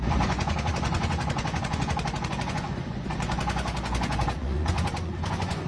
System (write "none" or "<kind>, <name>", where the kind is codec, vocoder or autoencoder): vocoder, Vocos